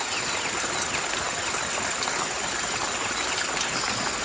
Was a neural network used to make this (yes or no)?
no